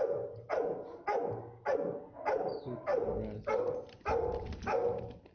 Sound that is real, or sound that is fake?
real